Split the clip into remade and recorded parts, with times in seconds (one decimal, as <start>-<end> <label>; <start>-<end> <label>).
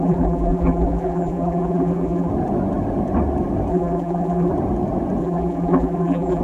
0.0-2.3 remade; 2.3-3.7 recorded; 3.7-4.5 remade; 4.5-5.2 recorded; 5.2-6.4 remade